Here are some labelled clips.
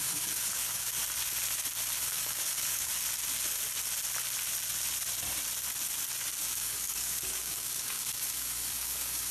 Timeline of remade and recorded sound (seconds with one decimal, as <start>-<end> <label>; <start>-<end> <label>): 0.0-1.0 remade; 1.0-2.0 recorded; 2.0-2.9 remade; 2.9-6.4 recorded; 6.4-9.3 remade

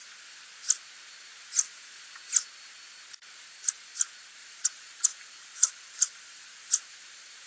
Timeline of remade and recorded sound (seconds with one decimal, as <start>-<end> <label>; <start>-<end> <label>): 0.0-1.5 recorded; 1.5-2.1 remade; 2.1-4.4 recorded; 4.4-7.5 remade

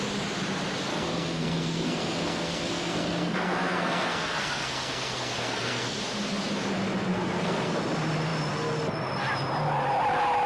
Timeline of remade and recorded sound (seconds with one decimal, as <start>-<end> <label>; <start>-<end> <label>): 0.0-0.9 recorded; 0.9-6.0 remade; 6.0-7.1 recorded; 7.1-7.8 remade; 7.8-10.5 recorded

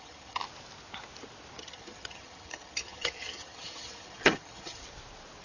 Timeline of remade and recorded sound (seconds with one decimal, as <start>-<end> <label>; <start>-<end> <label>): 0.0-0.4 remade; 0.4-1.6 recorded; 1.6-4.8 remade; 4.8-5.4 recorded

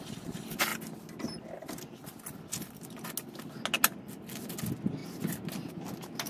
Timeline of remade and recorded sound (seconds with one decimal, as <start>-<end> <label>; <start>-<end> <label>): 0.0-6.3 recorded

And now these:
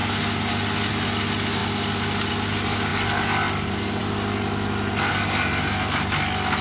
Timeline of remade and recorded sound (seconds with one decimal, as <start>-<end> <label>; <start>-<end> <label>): 0.0-6.6 recorded